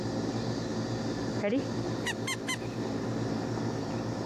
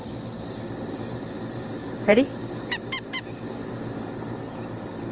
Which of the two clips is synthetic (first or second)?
second